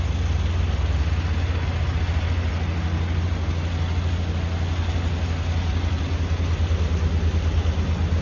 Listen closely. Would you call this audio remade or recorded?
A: recorded